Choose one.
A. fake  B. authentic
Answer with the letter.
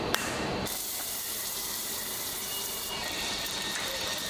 A